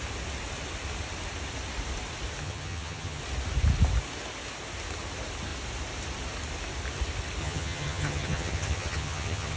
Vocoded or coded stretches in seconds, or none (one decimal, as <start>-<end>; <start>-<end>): 2.4-3.2; 7.4-9.6

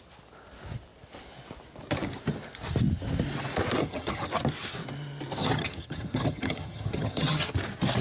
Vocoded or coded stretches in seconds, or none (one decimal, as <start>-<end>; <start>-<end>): 3.8-4.3; 5.4-7.5

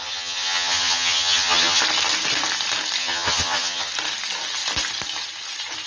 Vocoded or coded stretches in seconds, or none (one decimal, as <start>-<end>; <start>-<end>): 0.0-1.8; 3.0-3.9

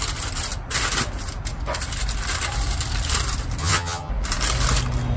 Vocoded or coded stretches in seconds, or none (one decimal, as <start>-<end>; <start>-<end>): 3.6-4.1

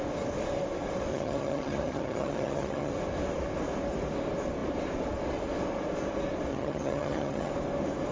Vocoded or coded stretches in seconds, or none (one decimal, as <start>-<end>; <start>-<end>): 1.1-2.9; 6.5-7.5

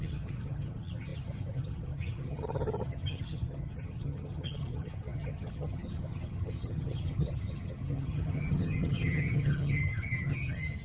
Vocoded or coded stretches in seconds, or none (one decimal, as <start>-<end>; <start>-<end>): 0.0-10.8